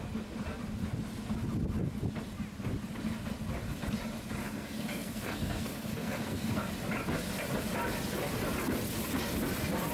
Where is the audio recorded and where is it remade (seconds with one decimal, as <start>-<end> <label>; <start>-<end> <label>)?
0.0-4.4 recorded; 4.4-6.7 remade; 6.7-9.9 recorded